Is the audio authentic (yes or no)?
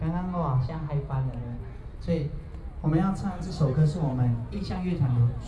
yes